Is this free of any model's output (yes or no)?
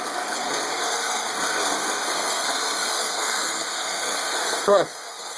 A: no